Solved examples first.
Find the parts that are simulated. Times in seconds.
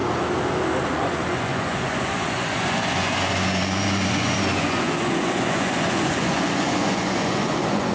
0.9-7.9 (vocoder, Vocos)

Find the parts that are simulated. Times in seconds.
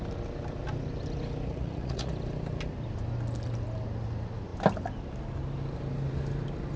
1.5-2.1 (vocoder, Vocos)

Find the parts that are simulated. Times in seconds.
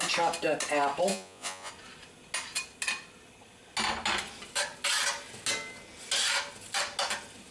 1.1-1.7 (vocoder, Vocos)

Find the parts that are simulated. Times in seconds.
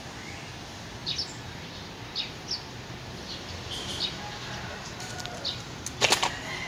none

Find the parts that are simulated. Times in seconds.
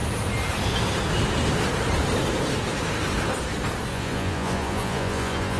3.9-5.6 (vocoder, Vocos)